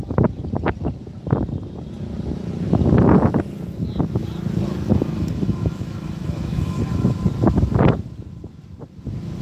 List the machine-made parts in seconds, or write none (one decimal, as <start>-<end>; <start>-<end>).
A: 4.9-7.2